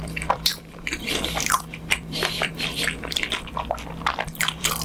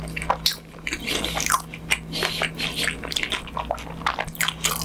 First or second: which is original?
second